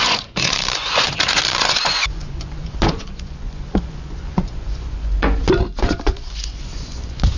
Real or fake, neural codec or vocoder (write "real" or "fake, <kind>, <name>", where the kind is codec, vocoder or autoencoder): fake, vocoder, Vocos